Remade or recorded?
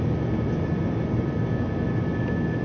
recorded